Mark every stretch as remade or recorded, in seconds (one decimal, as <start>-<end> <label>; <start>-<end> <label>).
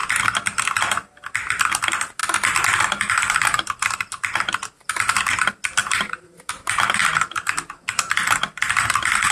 0.0-5.8 recorded; 5.8-7.0 remade; 7.0-9.3 recorded